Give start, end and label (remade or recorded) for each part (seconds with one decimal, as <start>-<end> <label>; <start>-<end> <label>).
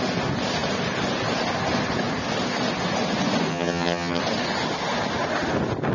0.0-3.5 recorded; 3.5-4.2 remade; 4.2-5.9 recorded